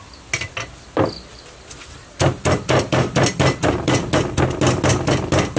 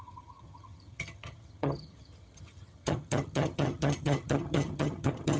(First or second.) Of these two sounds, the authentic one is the first